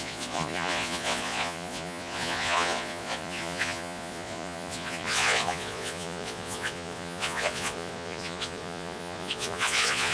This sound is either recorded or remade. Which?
remade